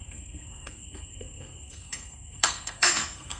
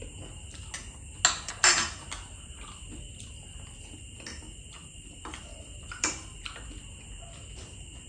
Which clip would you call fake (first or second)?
first